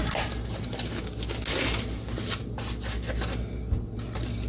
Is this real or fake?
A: real